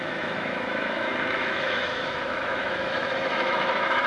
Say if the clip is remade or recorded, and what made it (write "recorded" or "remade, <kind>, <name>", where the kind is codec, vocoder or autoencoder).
remade, autoencoder, DAC-VAE